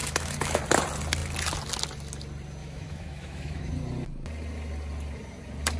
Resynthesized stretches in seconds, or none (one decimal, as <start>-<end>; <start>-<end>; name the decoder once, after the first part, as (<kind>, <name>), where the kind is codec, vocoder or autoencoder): 0.0-0.6 (autoencoder, DAC-VAE); 2.6-3.7